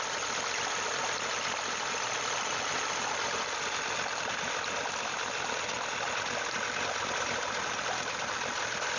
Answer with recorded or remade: recorded